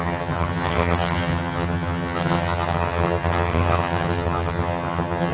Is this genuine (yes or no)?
no